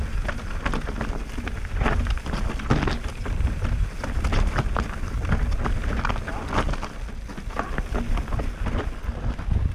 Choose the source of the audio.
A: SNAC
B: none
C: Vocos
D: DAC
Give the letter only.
B